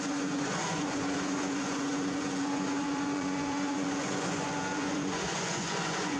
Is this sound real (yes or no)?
no